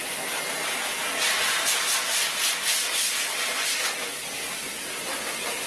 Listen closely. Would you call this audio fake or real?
real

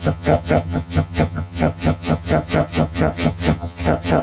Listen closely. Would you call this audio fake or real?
fake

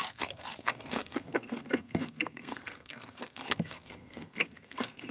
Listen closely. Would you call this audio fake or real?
fake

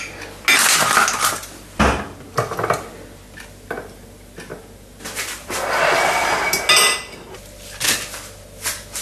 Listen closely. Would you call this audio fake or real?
real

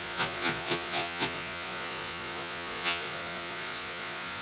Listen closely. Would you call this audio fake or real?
fake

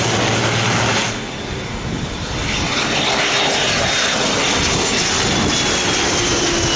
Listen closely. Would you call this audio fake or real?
real